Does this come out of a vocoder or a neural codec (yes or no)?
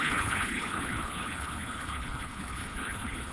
yes